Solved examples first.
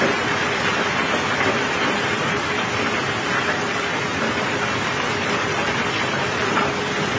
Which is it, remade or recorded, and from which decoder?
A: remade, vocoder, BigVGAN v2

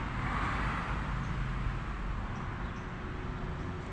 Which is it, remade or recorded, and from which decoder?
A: recorded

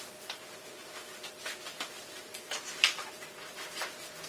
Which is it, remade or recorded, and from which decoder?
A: remade, vocoder, BigVGAN v2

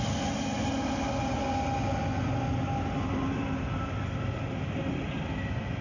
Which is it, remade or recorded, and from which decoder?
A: recorded